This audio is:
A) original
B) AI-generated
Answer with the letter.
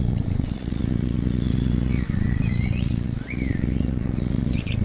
B